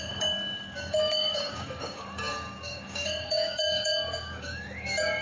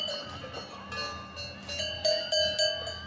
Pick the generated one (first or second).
first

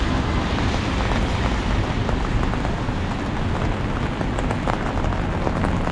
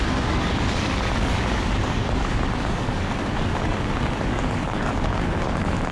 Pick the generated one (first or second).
second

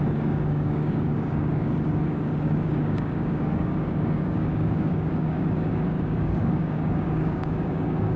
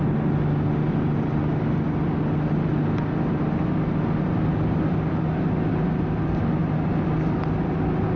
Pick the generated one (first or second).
first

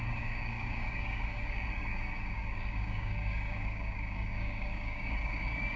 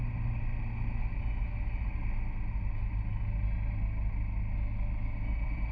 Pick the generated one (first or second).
first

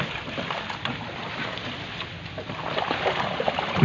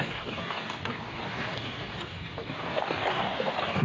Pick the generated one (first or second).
second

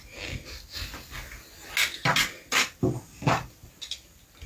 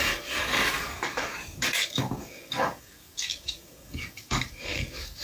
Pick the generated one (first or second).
second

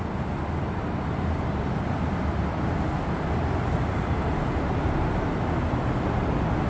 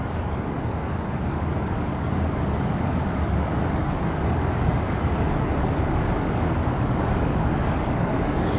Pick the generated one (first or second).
second